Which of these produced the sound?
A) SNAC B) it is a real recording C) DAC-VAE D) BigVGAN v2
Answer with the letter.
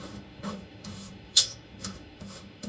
C